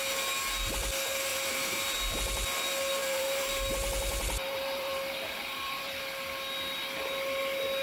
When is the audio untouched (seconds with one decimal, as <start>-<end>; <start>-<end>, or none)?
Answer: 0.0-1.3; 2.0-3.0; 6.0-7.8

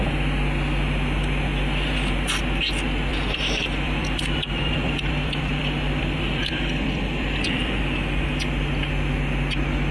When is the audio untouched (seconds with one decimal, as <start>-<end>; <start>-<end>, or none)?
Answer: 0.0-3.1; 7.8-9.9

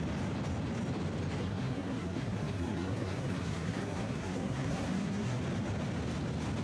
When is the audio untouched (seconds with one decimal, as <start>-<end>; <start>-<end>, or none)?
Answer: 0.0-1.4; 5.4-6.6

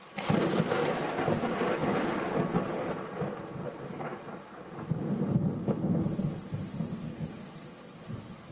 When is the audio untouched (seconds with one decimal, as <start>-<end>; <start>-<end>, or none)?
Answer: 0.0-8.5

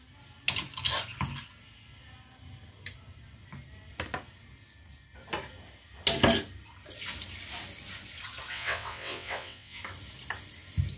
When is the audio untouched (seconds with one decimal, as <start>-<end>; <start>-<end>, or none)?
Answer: 0.0-8.5; 9.8-11.0